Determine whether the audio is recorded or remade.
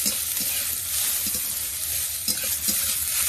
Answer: remade